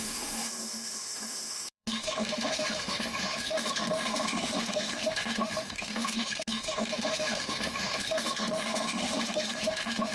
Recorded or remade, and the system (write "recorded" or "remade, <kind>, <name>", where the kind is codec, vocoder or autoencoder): remade, autoencoder, DAC-VAE